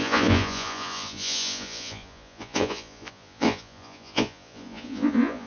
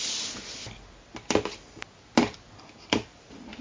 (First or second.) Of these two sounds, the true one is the second